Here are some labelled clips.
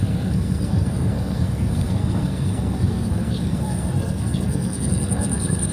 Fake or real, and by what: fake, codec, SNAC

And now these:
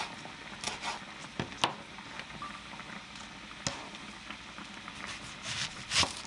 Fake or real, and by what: real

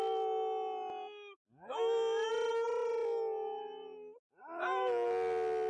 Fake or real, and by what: real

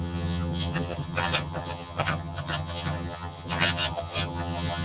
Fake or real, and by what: fake, vocoder, HiFi-GAN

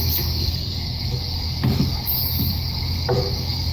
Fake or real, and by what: fake, codec, DAC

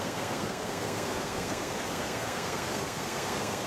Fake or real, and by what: fake, codec, SNAC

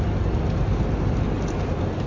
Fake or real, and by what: real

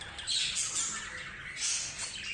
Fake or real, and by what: real